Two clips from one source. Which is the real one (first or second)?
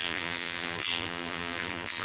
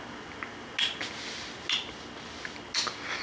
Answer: second